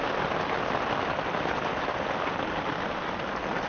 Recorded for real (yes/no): yes